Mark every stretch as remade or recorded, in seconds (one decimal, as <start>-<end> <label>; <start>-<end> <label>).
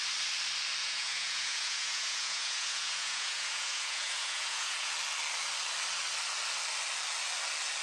0.0-0.8 recorded; 0.8-4.9 remade; 4.9-7.8 recorded